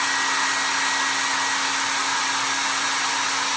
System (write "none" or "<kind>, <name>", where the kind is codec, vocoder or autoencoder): none